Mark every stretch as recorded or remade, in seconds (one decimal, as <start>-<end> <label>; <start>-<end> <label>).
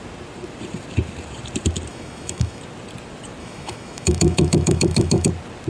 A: 0.0-1.9 recorded; 1.9-2.6 remade; 2.6-3.4 recorded; 3.4-5.3 remade; 5.3-5.7 recorded